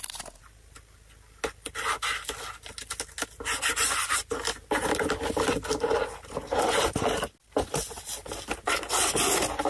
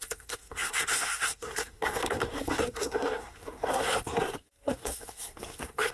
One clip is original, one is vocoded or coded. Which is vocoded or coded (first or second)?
second